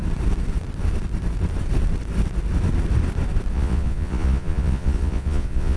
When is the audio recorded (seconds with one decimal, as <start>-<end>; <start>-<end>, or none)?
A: 0.0-3.5